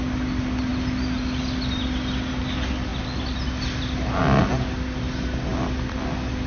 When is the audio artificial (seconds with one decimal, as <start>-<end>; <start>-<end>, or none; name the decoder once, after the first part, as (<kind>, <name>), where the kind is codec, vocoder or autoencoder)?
none